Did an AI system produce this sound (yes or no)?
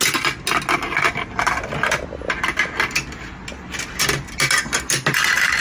no